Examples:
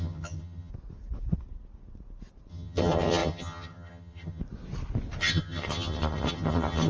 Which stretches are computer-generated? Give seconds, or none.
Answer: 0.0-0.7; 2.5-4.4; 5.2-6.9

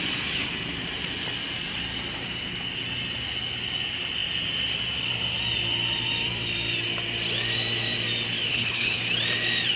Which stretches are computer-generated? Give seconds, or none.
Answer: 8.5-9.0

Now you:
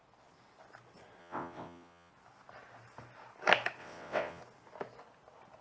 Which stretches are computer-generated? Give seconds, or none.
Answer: 1.2-2.1; 3.8-4.4